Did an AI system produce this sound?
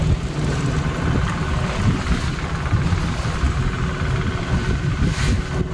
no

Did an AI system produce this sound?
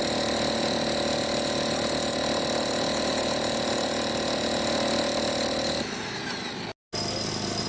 no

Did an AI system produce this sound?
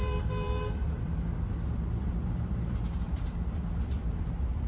yes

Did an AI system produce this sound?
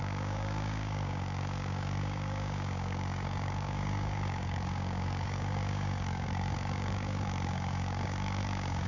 yes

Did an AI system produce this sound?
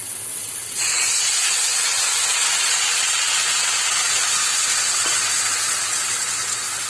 yes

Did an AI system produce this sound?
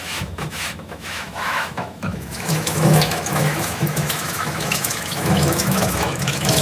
yes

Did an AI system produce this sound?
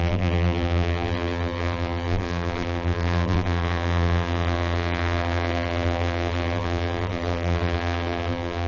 yes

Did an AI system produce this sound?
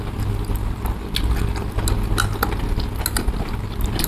no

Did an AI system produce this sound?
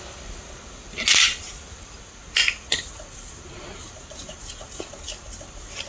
no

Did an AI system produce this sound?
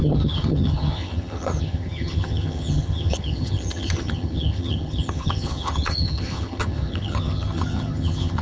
yes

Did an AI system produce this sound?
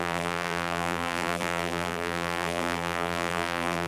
yes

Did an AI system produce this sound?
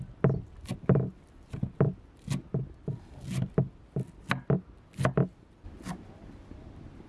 no